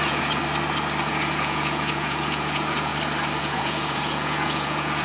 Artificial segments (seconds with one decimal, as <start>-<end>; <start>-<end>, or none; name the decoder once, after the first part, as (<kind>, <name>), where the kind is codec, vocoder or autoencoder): 0.0-0.4 (vocoder, Vocos); 1.1-2.9; 3.4-5.0